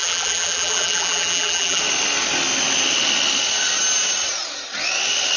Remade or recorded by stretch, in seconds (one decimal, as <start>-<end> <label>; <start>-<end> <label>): 0.0-1.8 remade; 1.8-5.4 recorded

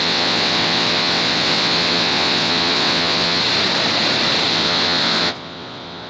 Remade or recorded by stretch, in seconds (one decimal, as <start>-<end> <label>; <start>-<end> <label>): 0.0-3.4 remade; 3.4-4.5 recorded; 4.5-6.1 remade